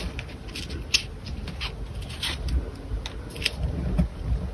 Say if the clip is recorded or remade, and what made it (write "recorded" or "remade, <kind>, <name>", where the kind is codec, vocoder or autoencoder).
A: recorded